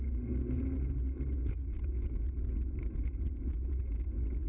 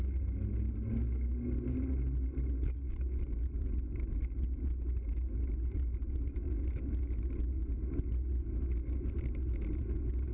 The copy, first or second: first